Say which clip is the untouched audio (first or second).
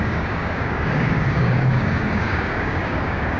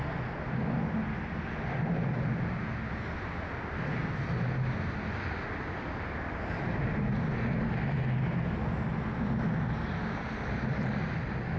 second